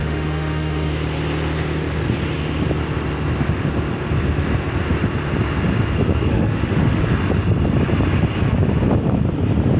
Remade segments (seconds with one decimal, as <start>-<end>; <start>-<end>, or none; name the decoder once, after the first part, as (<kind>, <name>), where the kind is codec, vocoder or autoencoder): 0.0-0.9 (autoencoder, DAC-VAE); 6.3-7.0